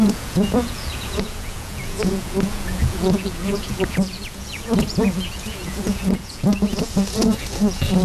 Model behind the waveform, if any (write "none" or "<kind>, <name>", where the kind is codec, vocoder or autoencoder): vocoder, Vocos